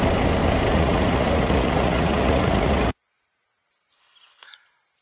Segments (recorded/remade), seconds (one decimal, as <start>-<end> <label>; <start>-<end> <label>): 0.0-0.7 recorded; 0.7-3.7 remade; 3.7-5.0 recorded